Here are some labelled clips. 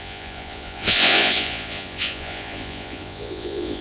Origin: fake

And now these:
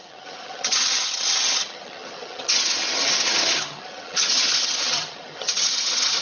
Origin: fake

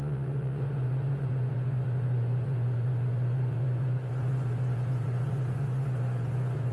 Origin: fake